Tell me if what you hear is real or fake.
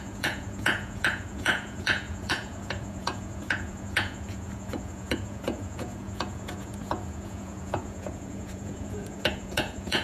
fake